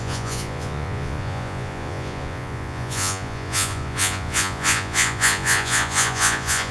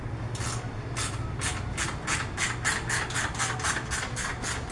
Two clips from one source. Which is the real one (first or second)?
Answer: second